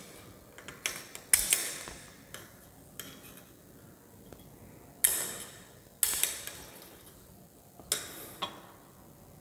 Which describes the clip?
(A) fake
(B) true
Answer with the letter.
B